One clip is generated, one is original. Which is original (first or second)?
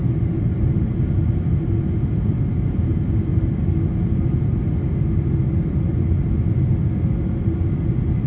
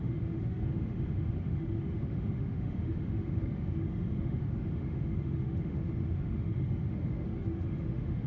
first